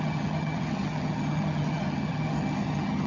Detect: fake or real fake